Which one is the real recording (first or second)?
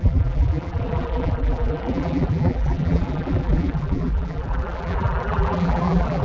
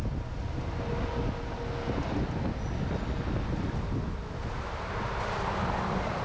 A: second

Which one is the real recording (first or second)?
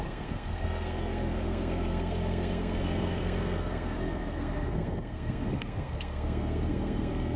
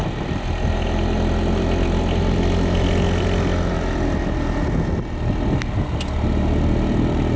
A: second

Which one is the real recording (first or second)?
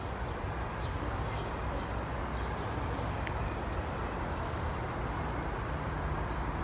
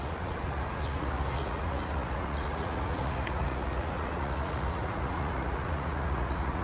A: first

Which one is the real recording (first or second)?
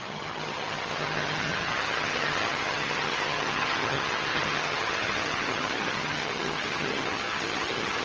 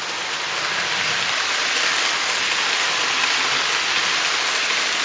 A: second